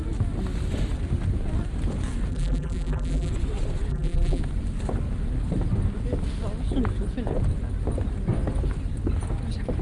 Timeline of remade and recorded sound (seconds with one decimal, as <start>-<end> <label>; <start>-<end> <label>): 0.0-2.3 recorded; 2.3-3.3 remade; 3.3-3.9 recorded; 3.9-4.4 remade; 4.4-9.8 recorded